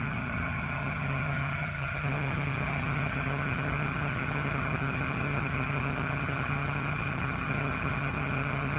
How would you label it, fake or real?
fake